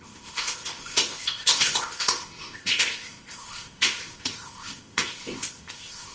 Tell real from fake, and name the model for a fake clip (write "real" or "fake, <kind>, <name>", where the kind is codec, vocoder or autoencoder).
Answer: fake, codec, ZipCodec